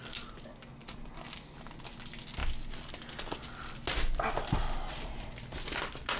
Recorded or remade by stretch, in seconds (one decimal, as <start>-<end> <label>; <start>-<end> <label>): 0.0-6.2 recorded